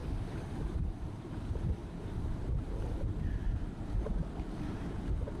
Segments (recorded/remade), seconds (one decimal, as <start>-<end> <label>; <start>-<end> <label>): 0.0-1.3 remade; 1.3-1.8 recorded; 1.8-3.1 remade; 3.1-5.4 recorded